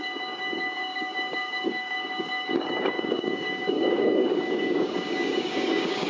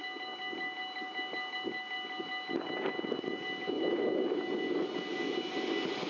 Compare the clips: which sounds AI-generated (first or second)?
first